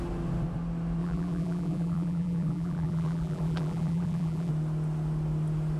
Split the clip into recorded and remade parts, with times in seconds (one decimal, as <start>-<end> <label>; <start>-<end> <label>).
0.0-1.0 recorded; 1.0-4.5 remade; 4.5-5.8 recorded